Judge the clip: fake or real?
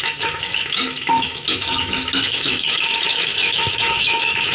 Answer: fake